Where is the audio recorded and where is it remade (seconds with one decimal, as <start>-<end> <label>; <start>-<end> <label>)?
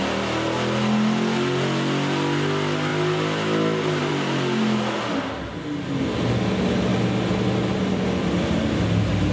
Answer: 0.0-9.3 recorded